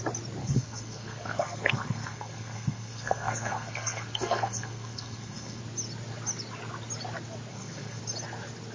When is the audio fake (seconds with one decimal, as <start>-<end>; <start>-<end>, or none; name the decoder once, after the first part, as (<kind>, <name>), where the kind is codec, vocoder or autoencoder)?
0.4-5.6 (codec, SNAC); 7.5-8.0